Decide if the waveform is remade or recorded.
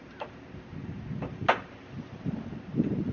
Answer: recorded